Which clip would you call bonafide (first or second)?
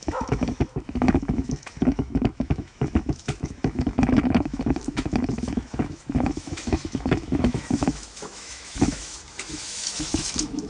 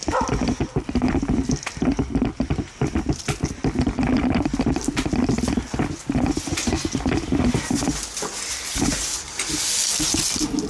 second